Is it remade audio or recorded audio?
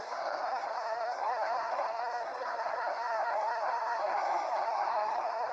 remade